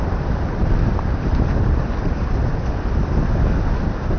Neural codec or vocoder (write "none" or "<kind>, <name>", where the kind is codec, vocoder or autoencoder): none